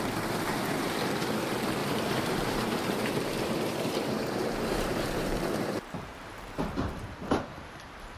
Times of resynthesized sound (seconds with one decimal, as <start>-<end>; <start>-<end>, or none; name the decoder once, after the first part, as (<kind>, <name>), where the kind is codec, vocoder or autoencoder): 1.8-6.6 (vocoder, BigVGAN v2)

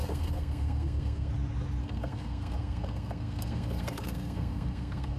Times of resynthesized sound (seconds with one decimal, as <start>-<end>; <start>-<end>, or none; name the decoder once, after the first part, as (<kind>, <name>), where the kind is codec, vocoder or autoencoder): 0.0-1.3 (codec, SNAC); 1.8-5.2

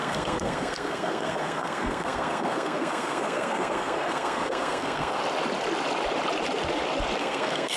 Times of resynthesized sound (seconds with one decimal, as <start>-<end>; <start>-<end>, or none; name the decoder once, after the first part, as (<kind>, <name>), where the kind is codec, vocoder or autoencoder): 0.0-5.2 (codec, SNAC); 7.2-7.8

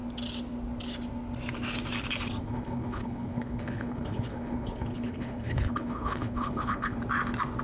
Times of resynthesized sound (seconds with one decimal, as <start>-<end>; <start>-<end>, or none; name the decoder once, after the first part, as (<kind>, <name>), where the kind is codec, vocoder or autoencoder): 2.4-7.0 (codec, HILCodec)